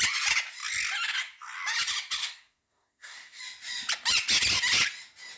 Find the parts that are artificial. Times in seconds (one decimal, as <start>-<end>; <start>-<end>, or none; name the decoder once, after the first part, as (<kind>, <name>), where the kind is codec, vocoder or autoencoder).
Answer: 2.2-3.4 (codec, SNAC)